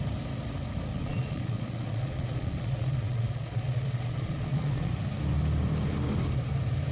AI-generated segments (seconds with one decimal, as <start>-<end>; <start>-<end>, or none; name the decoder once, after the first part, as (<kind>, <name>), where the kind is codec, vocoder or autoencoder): 0.9-4.9 (vocoder, Vocos)